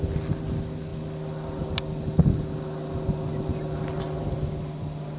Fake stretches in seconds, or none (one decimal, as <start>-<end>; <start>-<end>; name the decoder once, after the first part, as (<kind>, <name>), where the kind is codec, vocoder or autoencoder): none